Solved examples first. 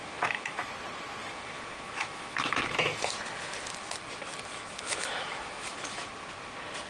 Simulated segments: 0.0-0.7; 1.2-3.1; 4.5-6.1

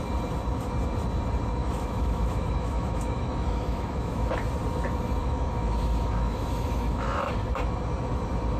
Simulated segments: 1.6-4.3; 5.2-7.3

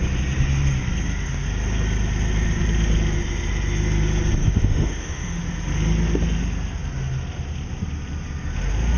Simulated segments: 4.4-5.4

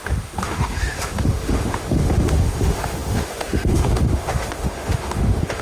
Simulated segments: 0.0-5.6

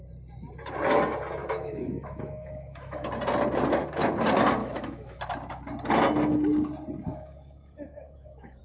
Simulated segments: 1.4-3.1; 4.6-5.2; 7.1-8.6